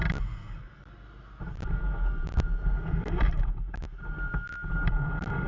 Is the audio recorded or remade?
recorded